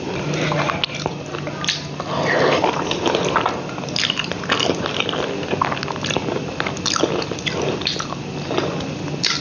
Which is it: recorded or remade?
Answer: recorded